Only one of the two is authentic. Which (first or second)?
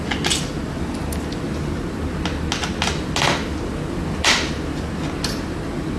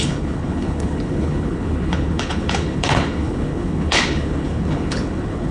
first